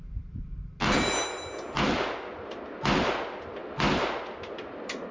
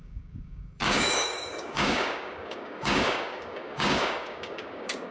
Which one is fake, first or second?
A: second